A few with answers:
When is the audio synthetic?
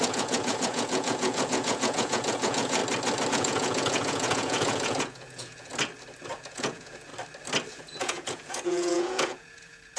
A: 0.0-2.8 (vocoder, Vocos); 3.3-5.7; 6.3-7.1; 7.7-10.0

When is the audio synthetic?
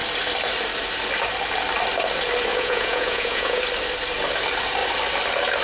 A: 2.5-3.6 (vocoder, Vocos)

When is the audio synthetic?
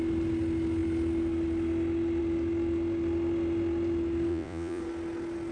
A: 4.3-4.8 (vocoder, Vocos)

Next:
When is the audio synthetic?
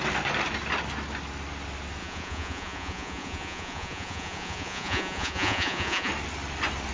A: 2.0-6.1 (vocoder, Vocos)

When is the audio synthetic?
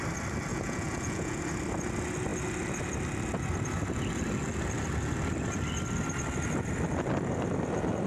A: 0.5-1.4 (vocoder, Vocos)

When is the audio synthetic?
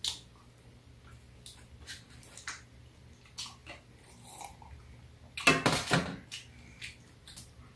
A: none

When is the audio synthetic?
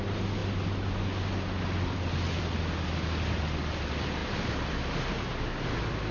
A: none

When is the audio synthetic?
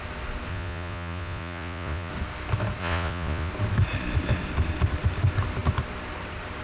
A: 0.5-2.1 (vocoder, Vocos); 2.8-3.5